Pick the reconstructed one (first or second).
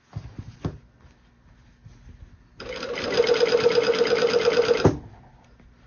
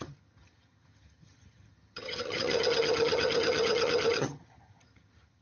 second